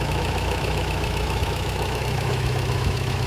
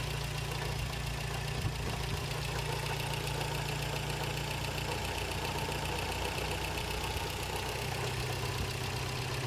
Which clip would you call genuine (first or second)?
second